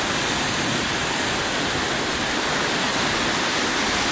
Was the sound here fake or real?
real